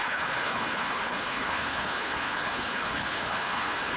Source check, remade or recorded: remade